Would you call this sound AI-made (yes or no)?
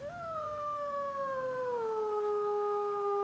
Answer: yes